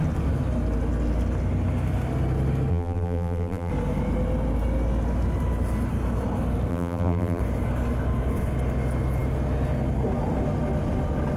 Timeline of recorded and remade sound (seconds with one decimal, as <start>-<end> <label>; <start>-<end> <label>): 0.0-2.7 recorded; 2.7-3.7 remade; 3.7-6.7 recorded; 6.7-7.4 remade; 7.4-11.4 recorded